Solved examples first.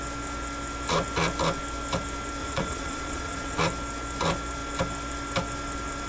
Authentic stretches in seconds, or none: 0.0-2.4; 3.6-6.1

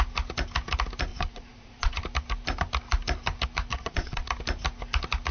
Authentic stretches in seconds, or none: 0.0-1.1; 2.0-3.7; 4.3-5.3

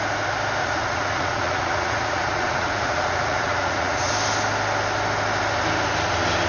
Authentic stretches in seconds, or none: 0.0-0.6; 4.1-6.5

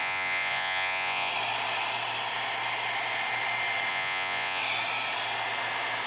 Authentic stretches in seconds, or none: 1.3-3.9; 4.6-6.1

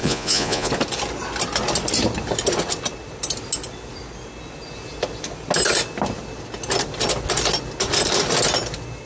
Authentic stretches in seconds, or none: 0.7-9.1